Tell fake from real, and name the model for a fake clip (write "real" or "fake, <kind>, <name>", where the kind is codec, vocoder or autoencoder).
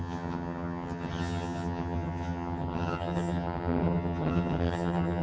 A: fake, vocoder, HiFi-GAN